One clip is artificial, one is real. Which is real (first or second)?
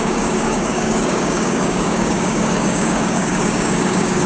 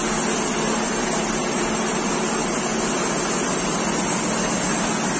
second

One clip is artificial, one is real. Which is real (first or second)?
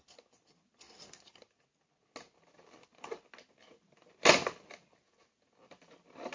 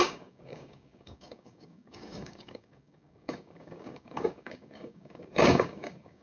first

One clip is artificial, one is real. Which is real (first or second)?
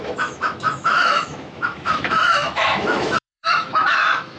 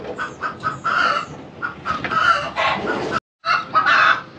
second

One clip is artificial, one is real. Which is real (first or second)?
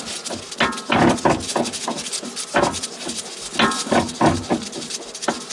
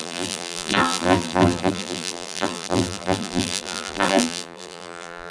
first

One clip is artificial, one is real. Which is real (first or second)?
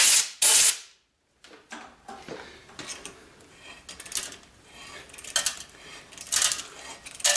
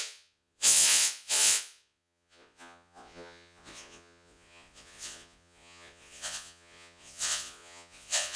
first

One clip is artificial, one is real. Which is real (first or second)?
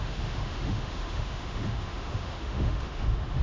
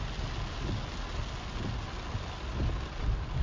second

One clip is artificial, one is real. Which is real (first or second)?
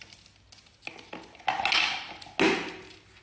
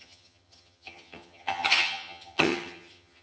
first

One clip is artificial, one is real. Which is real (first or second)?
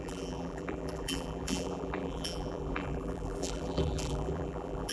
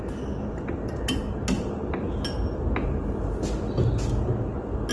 second